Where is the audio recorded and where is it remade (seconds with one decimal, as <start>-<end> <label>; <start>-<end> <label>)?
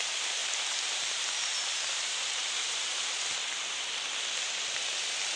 0.0-0.4 recorded; 0.4-3.1 remade; 3.1-5.4 recorded